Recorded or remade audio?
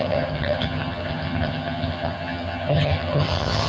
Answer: remade